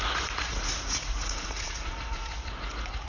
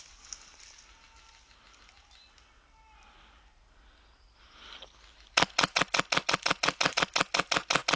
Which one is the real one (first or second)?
second